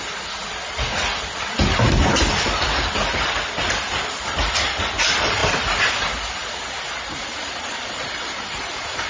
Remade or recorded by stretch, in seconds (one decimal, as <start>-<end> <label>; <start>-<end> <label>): 0.0-9.1 recorded